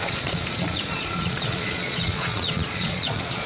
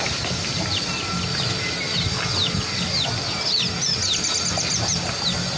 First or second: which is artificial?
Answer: first